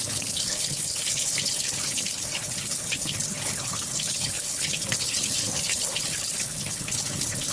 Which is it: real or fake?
fake